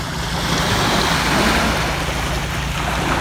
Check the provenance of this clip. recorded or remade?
recorded